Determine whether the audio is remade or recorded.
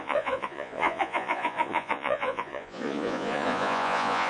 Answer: remade